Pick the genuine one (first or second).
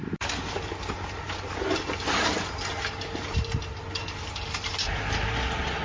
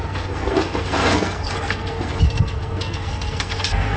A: first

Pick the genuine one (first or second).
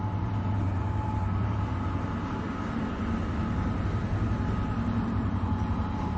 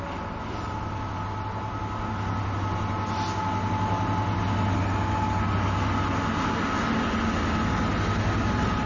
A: second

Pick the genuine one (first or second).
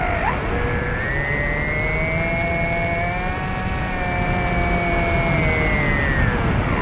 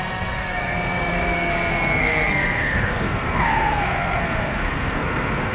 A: first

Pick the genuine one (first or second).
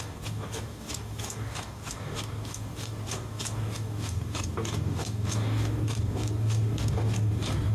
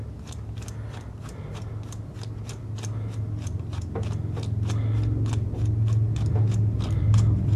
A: second